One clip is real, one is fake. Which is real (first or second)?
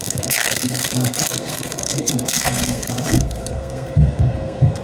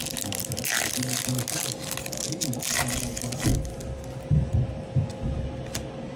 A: second